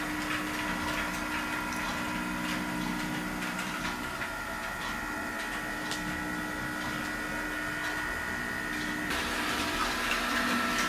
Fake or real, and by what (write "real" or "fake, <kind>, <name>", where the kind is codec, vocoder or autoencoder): real